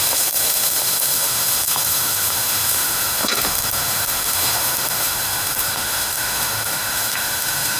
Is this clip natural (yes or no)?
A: no